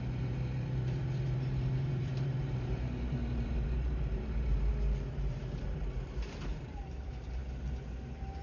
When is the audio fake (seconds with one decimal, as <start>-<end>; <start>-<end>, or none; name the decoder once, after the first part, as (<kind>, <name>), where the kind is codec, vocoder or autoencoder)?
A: 0.0-7.4 (vocoder, BigVGAN v2); 7.9-8.4